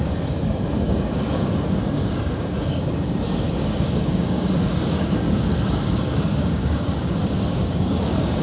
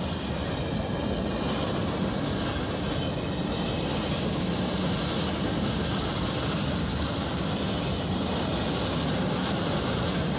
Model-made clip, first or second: first